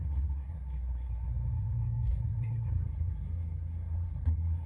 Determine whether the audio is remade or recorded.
remade